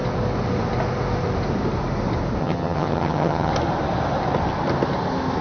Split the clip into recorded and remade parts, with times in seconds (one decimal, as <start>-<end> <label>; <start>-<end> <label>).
0.0-2.4 recorded; 2.4-3.5 remade; 3.5-5.4 recorded